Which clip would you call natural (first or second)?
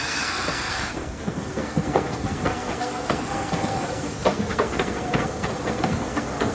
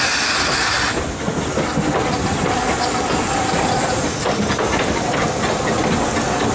second